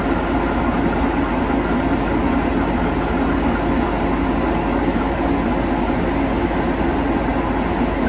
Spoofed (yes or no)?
no